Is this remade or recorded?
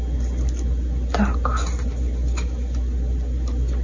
recorded